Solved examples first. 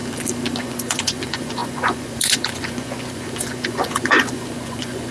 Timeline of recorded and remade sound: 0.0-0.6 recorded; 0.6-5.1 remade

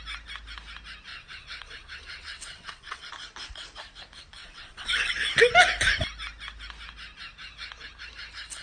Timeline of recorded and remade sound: 0.0-1.1 recorded; 1.1-3.1 remade; 3.1-4.4 recorded; 4.4-5.1 remade; 5.1-8.6 recorded

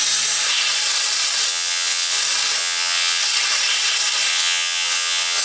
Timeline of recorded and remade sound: 0.0-1.5 recorded; 1.5-2.2 remade; 2.2-2.6 recorded; 2.6-3.2 remade; 3.2-4.3 recorded; 4.3-5.4 remade